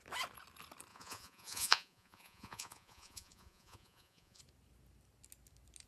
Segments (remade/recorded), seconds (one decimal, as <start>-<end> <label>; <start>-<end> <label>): 0.0-0.9 recorded; 0.9-4.4 remade; 4.4-5.9 recorded